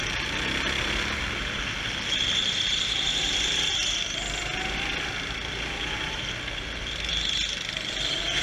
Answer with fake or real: real